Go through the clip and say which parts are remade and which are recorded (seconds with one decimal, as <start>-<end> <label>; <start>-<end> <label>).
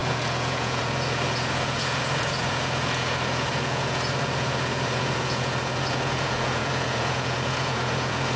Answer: 0.0-8.4 remade